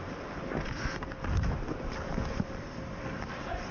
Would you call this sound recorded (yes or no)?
yes